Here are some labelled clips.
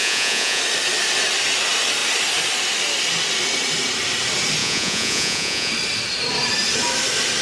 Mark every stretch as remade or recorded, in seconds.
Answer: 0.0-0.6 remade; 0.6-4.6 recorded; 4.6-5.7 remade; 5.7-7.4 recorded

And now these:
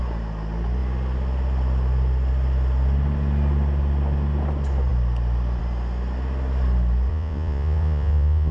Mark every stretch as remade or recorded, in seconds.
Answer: 0.0-7.1 recorded; 7.1-8.5 remade

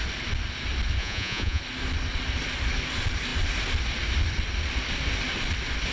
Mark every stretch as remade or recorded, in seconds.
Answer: 0.0-1.0 recorded; 1.0-1.6 remade; 1.6-5.9 recorded

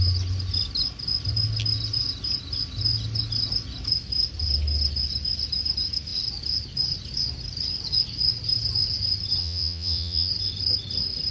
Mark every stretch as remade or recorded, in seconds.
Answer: 0.0-9.4 recorded; 9.4-10.3 remade; 10.3-11.3 recorded

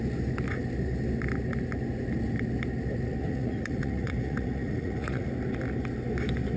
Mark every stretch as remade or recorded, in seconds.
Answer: 0.0-3.2 recorded; 3.2-5.3 remade; 5.3-6.6 recorded

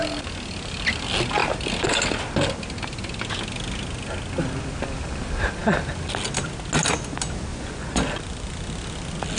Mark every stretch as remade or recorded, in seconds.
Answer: 0.0-7.5 recorded; 7.5-8.1 remade; 8.1-9.4 recorded

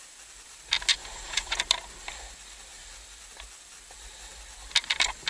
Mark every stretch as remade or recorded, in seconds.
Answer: 0.0-0.9 recorded; 0.9-1.6 remade; 1.6-5.3 recorded